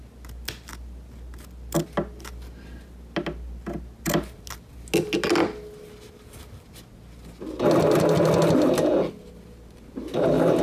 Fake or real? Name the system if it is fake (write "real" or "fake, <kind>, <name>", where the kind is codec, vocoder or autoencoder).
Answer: real